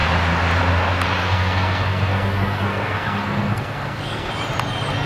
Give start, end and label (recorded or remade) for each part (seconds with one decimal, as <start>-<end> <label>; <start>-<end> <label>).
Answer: 0.0-1.2 recorded; 1.2-4.3 remade; 4.3-5.1 recorded